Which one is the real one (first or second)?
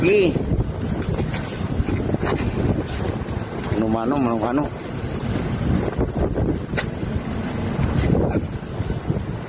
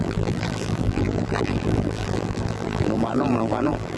first